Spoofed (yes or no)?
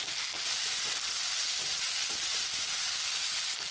no